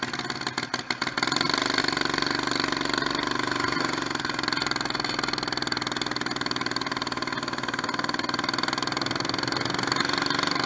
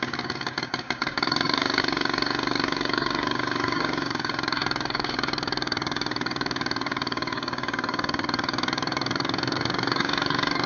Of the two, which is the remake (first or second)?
second